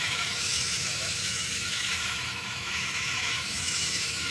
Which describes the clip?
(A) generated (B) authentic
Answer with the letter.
A